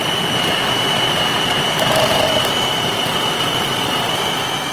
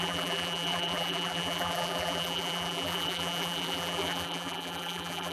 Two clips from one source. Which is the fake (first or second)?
second